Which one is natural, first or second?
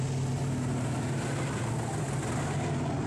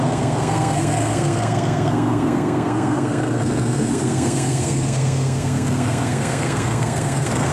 first